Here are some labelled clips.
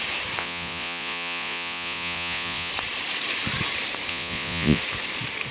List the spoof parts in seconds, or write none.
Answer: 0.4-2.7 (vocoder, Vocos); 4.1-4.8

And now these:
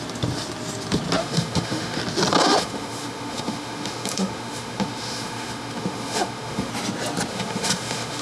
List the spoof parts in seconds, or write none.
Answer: 1.2-2.0 (autoencoder, DAC-VAE); 2.5-6.7; 7.3-8.2

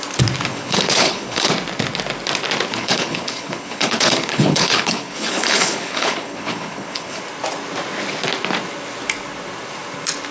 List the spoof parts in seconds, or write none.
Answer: 0.5-1.5 (codec, HILCodec); 2.7-7.2

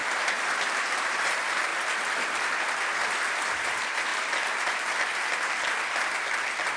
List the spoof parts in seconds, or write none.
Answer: 0.7-1.7 (vocoder, BigVGAN v2); 3.4-4.1

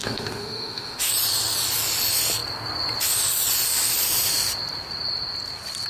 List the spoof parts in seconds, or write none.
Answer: 0.0-1.1 (autoencoder, DAC-VAE)

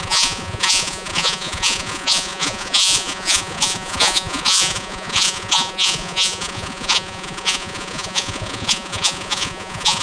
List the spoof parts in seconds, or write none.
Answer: 0.0-10.0 (vocoder, Vocos)